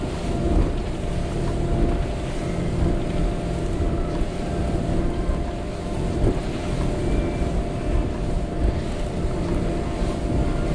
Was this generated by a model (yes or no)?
no